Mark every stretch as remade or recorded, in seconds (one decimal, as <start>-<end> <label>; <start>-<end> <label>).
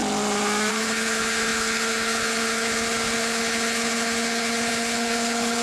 0.0-0.7 recorded; 0.7-5.6 remade